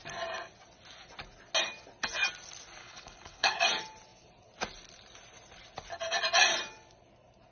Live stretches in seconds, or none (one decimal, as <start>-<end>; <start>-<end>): 0.0-2.8; 3.6-7.5